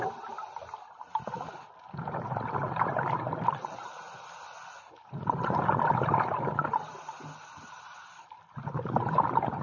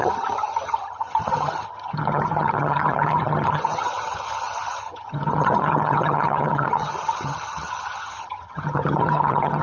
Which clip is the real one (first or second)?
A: first